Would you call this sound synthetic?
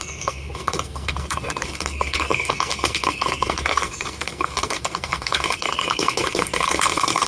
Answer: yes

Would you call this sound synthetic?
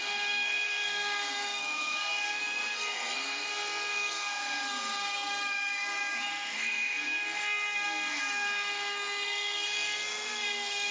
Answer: yes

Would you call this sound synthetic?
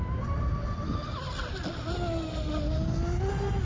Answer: no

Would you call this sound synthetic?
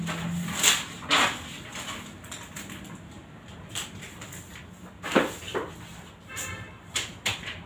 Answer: no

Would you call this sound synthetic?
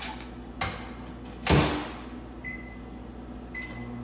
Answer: no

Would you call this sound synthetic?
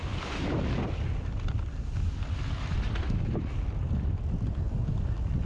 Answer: no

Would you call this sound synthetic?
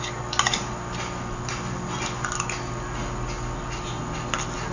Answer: no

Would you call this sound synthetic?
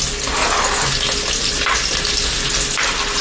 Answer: no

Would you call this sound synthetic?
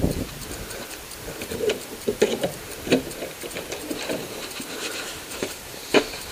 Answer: yes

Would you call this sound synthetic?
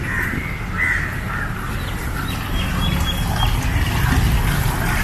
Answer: no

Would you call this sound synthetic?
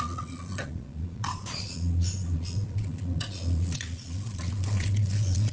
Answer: yes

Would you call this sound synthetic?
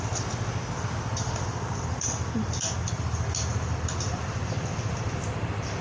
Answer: no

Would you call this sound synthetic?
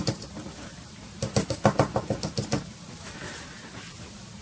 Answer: yes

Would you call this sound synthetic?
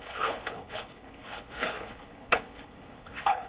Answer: yes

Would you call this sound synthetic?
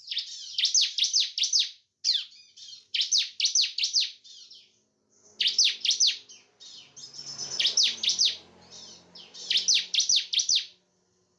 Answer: no